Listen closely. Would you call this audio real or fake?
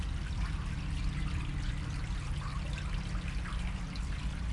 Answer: real